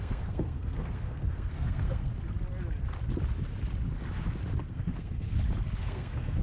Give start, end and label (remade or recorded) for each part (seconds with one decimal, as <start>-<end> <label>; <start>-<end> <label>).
0.0-2.1 remade; 2.1-4.7 recorded; 4.7-5.3 remade; 5.3-5.8 recorded; 5.8-6.4 remade

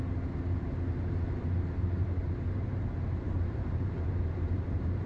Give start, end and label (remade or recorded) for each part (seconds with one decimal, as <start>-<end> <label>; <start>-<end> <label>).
0.0-2.2 recorded; 2.2-5.1 remade